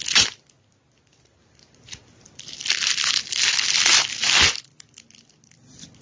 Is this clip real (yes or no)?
yes